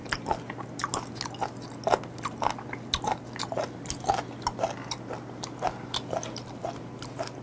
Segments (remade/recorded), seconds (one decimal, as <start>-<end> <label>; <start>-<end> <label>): 0.0-7.4 recorded

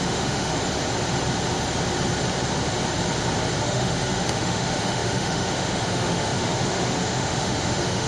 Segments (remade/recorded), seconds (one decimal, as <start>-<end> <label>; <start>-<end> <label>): 0.0-0.5 remade; 0.5-3.6 recorded; 3.6-8.1 remade

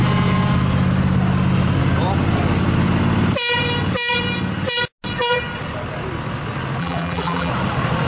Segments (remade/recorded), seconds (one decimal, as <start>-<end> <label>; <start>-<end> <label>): 0.0-6.8 recorded; 6.8-7.5 remade; 7.5-8.1 recorded

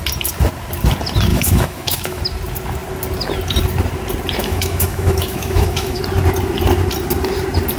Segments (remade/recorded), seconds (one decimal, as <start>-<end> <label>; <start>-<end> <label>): 0.0-1.3 recorded; 1.3-2.2 remade; 2.2-4.4 recorded; 4.4-6.0 remade; 6.0-7.8 recorded

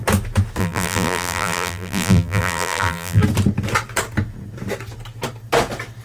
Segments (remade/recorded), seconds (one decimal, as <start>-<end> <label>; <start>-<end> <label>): 0.0-0.6 recorded; 0.6-3.2 remade; 3.2-6.0 recorded

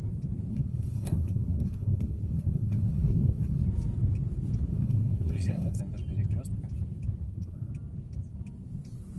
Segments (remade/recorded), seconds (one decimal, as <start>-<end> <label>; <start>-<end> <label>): 0.0-0.5 recorded; 0.5-3.6 remade; 3.6-4.7 recorded; 4.7-5.8 remade; 5.8-7.2 recorded; 7.2-7.7 remade; 7.7-9.2 recorded

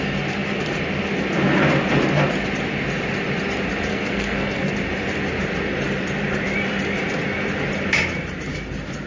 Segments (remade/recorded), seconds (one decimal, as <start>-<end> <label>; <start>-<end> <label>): 0.0-3.9 recorded; 3.9-4.7 remade; 4.7-9.1 recorded

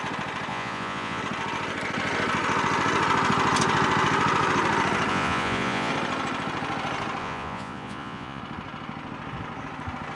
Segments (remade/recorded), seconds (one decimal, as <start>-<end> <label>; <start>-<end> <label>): 0.0-0.5 recorded; 0.5-1.2 remade; 1.2-5.1 recorded; 5.1-5.9 remade; 5.9-7.2 recorded; 7.2-8.4 remade; 8.4-10.1 recorded